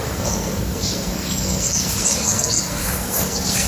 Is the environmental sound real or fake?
fake